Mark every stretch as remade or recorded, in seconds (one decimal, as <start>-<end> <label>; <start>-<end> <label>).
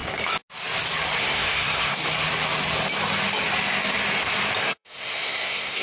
0.0-1.2 recorded; 1.2-2.0 remade; 2.0-4.6 recorded; 4.6-5.8 remade